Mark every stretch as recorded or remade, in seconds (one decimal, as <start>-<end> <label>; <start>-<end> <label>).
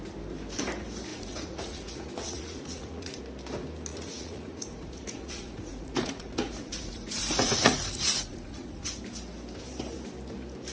0.0-1.1 recorded; 1.1-3.2 remade; 3.2-3.9 recorded; 3.9-9.0 remade; 9.0-10.7 recorded